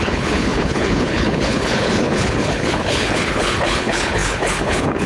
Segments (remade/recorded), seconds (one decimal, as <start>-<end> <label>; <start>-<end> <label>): 0.0-5.1 remade